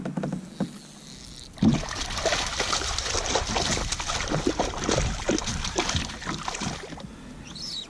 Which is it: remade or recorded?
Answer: recorded